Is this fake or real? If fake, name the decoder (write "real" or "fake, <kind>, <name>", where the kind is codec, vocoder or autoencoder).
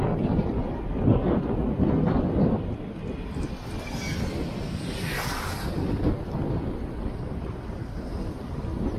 real